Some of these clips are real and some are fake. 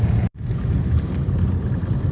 real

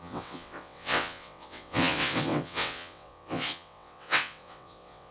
fake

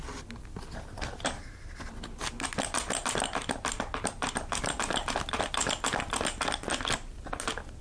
real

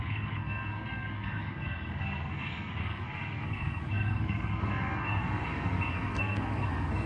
fake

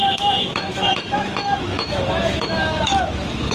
fake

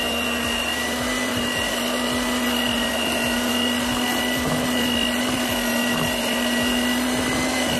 real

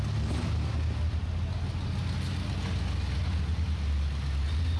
real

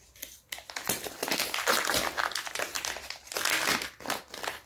real